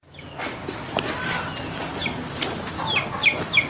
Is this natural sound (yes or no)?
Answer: yes